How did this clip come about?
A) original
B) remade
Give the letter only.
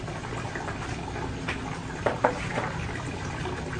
A